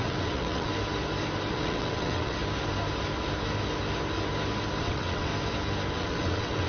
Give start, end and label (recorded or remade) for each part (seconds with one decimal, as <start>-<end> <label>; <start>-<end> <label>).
0.0-0.7 remade; 0.7-1.5 recorded; 1.5-2.4 remade; 2.4-4.8 recorded; 4.8-5.3 remade; 5.3-5.9 recorded; 5.9-6.7 remade